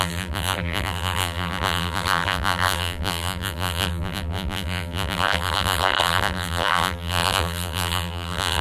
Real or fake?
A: fake